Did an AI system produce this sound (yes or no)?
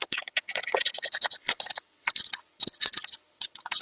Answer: yes